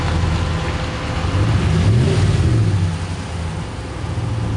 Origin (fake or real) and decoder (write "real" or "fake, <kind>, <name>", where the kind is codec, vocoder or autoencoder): real